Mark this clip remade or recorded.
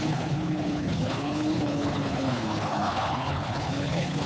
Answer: remade